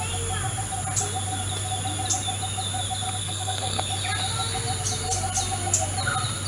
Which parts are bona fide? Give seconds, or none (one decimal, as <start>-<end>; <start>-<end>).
0.0-3.2; 3.8-6.5